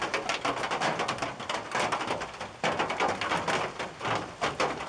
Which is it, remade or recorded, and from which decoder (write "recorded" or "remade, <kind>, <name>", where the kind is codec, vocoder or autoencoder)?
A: recorded